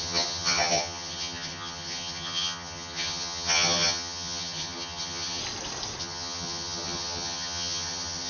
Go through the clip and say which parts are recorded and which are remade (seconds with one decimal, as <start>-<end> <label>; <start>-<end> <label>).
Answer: 0.0-5.4 remade; 5.4-6.0 recorded; 6.0-8.3 remade

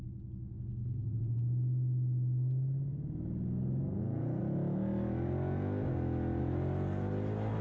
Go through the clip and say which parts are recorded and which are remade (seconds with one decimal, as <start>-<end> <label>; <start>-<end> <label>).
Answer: 0.0-7.6 recorded

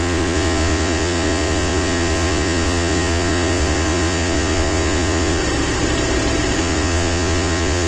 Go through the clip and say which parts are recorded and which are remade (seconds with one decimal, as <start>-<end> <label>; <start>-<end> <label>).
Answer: 0.0-5.4 remade; 5.4-6.6 recorded; 6.6-7.9 remade

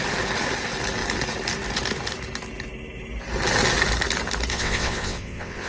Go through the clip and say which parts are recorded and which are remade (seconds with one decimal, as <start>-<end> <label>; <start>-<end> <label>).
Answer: 0.0-4.5 recorded; 4.5-5.7 remade

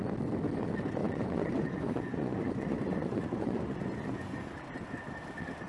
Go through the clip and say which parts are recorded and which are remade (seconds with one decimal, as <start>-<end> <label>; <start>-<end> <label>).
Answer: 0.0-1.0 recorded; 1.0-4.4 remade; 4.4-5.7 recorded

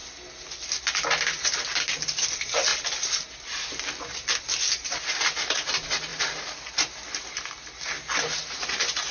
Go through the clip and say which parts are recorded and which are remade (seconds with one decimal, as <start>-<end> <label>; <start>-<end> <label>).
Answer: 0.0-9.1 recorded

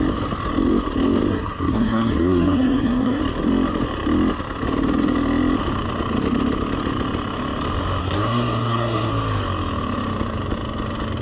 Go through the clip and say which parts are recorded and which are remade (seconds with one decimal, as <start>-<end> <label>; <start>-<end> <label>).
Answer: 0.0-1.3 recorded; 1.3-3.2 remade; 3.2-8.0 recorded; 8.0-9.1 remade; 9.1-11.2 recorded

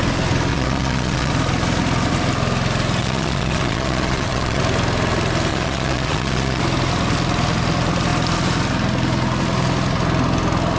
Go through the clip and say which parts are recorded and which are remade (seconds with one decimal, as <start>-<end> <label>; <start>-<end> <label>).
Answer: 0.0-0.5 recorded; 0.5-1.3 remade; 1.3-3.0 recorded; 3.0-4.6 remade; 4.6-5.5 recorded; 5.5-6.6 remade; 6.6-10.8 recorded